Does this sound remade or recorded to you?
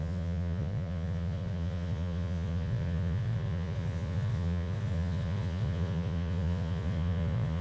remade